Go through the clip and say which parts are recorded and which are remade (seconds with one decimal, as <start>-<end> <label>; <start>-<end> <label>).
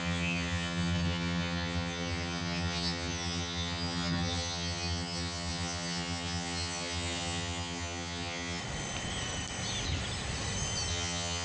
0.0-8.6 remade; 8.6-10.9 recorded; 10.9-11.4 remade